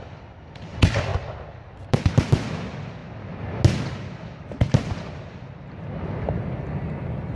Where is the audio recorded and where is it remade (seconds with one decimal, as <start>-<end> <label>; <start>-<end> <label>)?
0.0-7.4 recorded